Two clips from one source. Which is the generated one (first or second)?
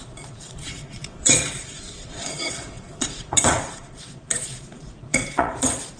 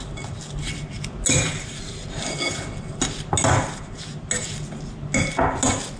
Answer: first